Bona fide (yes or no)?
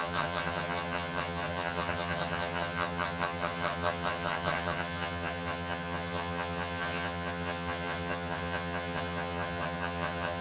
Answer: no